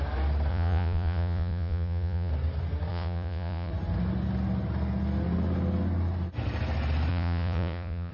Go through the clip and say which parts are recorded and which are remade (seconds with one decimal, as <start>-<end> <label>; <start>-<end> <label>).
0.0-0.5 recorded; 0.5-2.3 remade; 2.3-2.9 recorded; 2.9-3.7 remade; 3.7-7.1 recorded; 7.1-8.1 remade